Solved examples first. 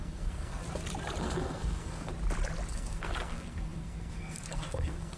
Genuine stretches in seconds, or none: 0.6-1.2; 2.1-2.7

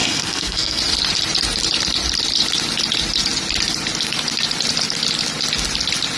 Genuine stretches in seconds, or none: 0.8-6.2

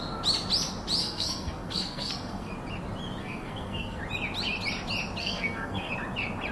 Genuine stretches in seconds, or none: 0.0-1.0; 2.5-3.2; 4.0-5.2; 5.9-6.5

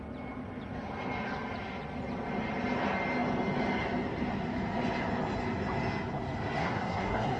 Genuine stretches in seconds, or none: 0.0-6.6

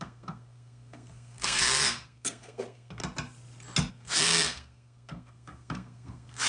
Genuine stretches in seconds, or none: 3.0-3.9